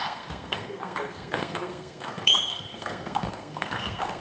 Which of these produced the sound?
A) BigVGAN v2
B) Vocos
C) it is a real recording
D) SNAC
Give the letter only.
D